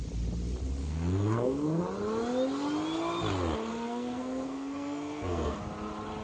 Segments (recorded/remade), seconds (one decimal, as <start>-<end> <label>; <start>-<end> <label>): 0.0-0.8 recorded; 0.8-1.8 remade; 1.8-3.7 recorded; 3.7-5.6 remade; 5.6-6.2 recorded